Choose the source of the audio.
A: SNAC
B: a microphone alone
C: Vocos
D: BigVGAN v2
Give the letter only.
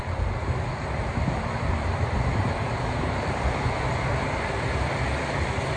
D